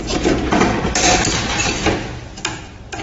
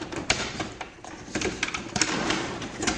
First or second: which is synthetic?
second